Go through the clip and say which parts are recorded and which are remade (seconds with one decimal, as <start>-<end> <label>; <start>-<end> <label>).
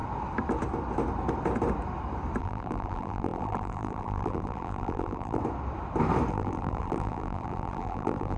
0.0-2.4 recorded; 2.4-5.4 remade; 5.4-6.3 recorded; 6.3-8.4 remade